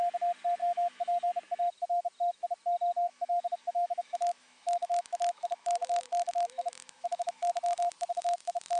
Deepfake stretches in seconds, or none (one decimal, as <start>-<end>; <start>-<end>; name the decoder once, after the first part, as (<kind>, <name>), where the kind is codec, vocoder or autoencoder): 0.6-1.3 (autoencoder, DAC-VAE); 3.1-7.5